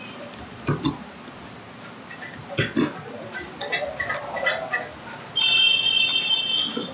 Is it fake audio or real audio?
real